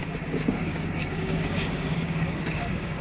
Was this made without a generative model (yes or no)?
no